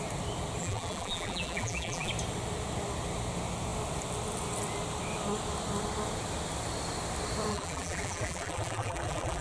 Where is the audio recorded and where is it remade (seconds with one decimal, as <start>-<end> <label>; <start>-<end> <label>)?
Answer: 0.0-0.6 recorded; 0.6-2.1 remade; 2.1-7.5 recorded; 7.5-9.4 remade